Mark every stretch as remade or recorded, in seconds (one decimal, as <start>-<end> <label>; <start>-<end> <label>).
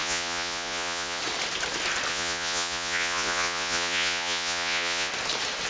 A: 0.0-1.2 remade; 1.2-2.1 recorded; 2.1-5.1 remade; 5.1-5.7 recorded